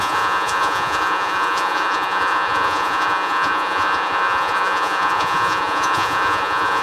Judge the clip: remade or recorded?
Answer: remade